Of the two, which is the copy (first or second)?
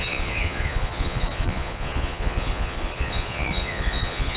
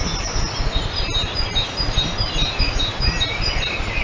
first